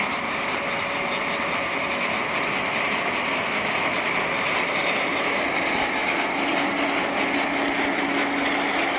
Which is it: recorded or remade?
recorded